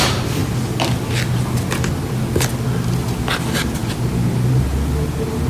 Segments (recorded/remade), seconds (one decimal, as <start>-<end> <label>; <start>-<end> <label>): 0.0-5.5 recorded